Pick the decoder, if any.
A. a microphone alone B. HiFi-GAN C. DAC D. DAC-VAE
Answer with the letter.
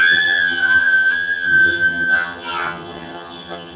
B